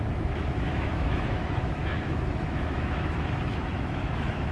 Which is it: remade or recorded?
remade